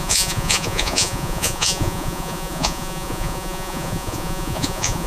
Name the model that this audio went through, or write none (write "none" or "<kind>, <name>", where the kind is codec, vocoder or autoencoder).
vocoder, Vocos